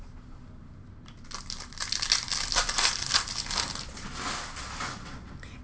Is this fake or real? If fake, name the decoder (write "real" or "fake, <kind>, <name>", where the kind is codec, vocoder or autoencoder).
real